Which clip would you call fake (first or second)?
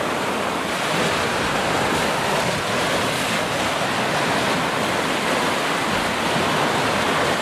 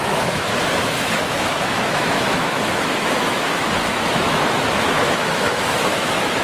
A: second